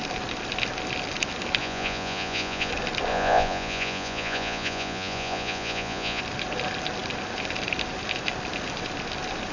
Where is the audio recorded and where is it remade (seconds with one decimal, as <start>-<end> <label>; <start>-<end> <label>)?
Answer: 0.0-1.6 recorded; 1.6-2.7 remade; 2.7-3.1 recorded; 3.1-6.2 remade; 6.2-9.5 recorded